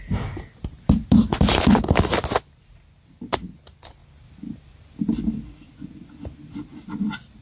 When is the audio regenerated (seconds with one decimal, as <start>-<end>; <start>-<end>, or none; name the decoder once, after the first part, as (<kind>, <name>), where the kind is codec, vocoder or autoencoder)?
none